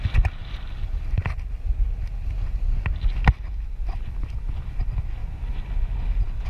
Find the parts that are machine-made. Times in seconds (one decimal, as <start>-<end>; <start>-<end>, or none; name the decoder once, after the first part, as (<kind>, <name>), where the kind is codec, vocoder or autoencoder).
0.4-1.0 (vocoder, BigVGAN v2); 5.2-6.0